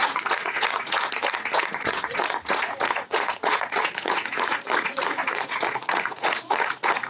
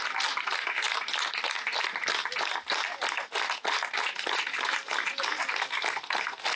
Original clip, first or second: second